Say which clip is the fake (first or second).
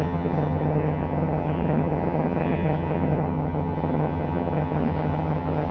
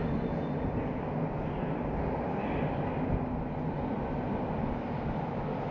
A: first